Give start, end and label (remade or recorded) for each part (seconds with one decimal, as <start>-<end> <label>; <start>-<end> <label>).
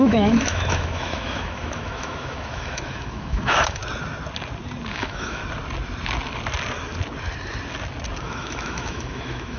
0.0-3.8 remade; 3.8-4.9 recorded; 4.9-5.4 remade; 5.4-8.2 recorded; 8.2-9.6 remade